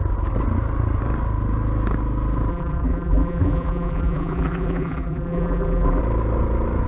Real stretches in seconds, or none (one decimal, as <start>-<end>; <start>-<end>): 0.0-2.5; 6.0-6.9